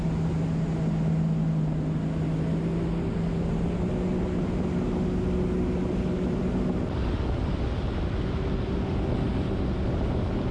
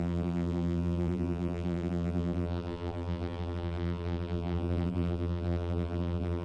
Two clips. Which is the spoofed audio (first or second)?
second